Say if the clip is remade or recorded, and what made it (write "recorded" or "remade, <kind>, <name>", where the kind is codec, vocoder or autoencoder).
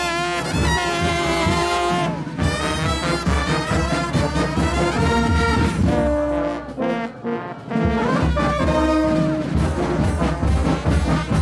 recorded